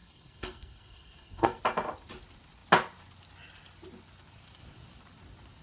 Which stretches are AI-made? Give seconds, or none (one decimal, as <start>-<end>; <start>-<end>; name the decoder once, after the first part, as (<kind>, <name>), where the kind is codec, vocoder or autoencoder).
0.0-1.6 (codec, SNAC)